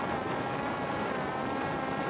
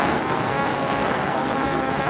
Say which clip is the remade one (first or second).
second